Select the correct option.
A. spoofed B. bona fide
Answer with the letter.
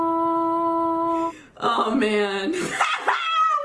B